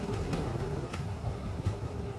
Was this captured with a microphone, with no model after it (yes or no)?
no